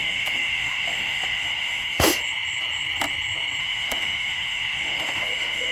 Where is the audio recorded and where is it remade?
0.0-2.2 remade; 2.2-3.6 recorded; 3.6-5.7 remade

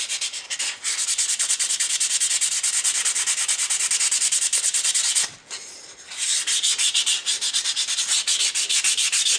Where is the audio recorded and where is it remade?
0.0-9.4 recorded